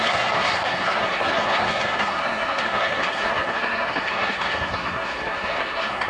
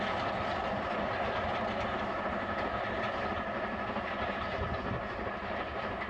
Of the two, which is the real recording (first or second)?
second